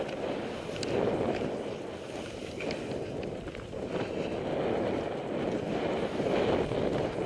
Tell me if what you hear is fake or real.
real